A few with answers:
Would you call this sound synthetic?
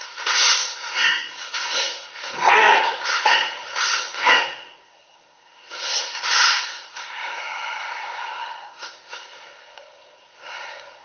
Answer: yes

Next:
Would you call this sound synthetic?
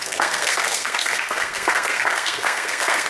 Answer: yes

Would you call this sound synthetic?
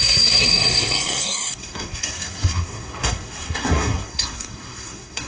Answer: yes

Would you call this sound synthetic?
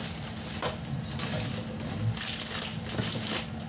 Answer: no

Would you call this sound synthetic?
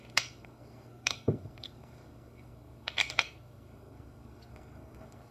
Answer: yes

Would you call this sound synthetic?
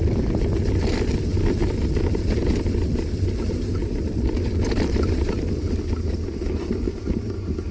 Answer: no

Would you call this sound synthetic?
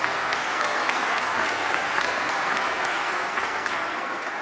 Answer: yes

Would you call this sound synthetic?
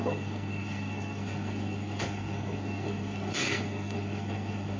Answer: yes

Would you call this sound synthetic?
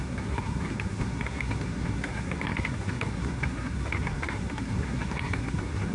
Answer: yes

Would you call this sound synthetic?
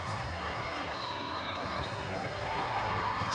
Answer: yes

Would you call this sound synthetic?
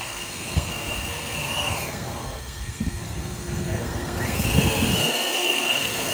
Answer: yes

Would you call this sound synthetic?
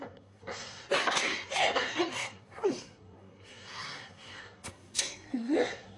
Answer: yes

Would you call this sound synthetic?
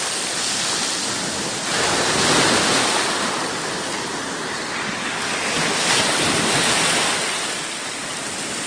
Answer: no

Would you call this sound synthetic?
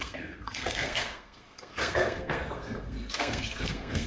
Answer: yes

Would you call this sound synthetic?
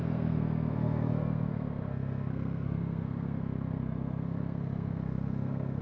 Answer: yes